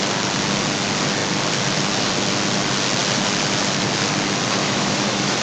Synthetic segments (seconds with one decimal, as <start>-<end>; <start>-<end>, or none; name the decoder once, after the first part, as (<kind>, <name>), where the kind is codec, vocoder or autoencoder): 4.6-5.4 (autoencoder, DAC-VAE)